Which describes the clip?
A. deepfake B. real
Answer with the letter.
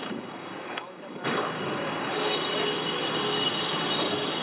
A